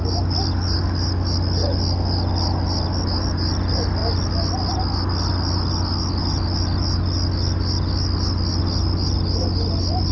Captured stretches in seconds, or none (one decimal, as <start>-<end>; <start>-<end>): 0.0-10.1